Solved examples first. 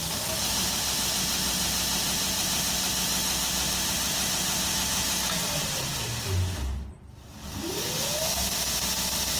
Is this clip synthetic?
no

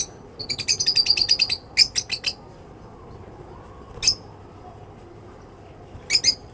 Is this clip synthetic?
no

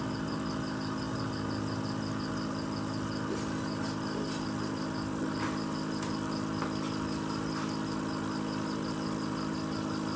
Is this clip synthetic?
no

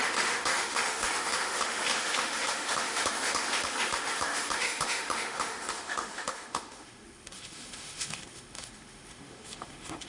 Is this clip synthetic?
yes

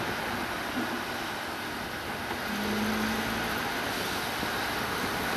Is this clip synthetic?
no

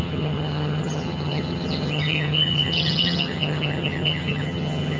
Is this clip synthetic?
yes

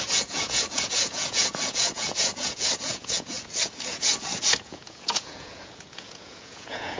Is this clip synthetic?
yes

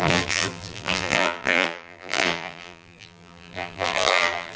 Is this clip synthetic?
yes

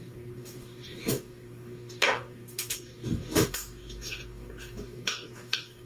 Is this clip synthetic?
yes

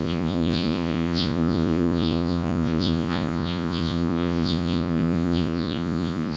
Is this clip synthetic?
yes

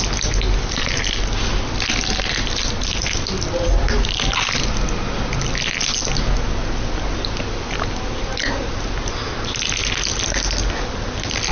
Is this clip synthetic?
no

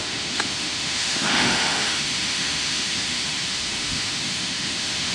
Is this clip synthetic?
yes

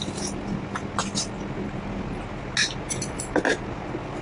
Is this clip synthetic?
no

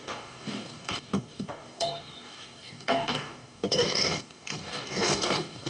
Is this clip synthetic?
yes